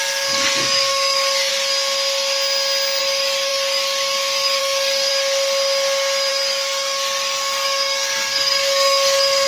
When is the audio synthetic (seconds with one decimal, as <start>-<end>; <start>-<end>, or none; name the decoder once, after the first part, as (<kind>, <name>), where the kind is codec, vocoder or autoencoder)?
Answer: 0.0-1.5 (codec, DAC); 3.0-5.1; 6.3-9.5